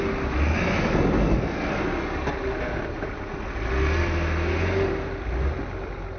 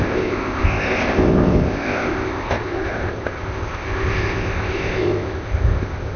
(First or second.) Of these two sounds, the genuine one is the first